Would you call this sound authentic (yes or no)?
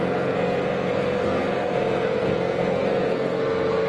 no